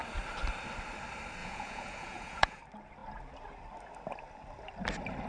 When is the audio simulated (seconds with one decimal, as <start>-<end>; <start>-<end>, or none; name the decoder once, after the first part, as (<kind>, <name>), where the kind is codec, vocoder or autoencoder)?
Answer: 1.4-2.6 (vocoder, Vocos)